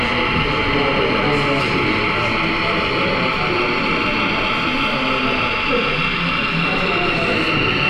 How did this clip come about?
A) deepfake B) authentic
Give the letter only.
B